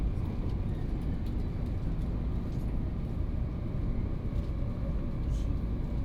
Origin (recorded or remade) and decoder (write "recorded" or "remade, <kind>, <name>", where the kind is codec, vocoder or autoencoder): recorded